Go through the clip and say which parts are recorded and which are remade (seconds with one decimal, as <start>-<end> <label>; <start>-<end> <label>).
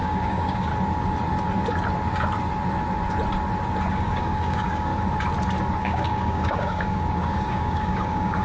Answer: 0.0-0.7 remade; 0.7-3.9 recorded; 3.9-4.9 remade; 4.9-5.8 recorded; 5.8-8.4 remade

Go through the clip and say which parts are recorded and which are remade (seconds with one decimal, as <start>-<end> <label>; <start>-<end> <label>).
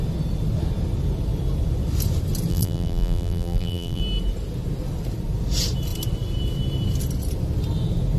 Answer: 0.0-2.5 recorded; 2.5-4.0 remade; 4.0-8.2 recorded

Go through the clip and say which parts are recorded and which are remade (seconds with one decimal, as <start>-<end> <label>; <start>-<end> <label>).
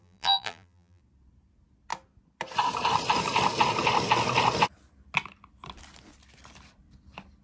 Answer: 0.0-1.0 remade; 1.0-7.4 recorded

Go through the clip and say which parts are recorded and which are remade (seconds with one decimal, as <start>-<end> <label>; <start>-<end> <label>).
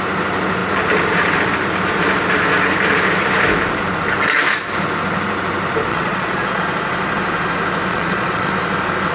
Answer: 0.0-5.9 recorded; 5.9-6.6 remade; 6.6-7.9 recorded; 7.9-8.5 remade; 8.5-9.1 recorded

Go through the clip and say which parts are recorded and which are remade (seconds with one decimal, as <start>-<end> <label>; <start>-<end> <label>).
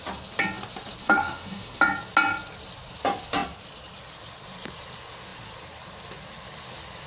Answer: 0.0-1.0 recorded; 1.0-1.8 remade; 1.8-7.1 recorded